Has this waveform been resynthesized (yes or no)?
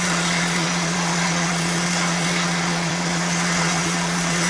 yes